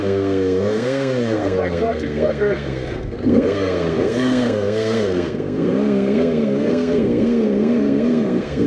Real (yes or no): no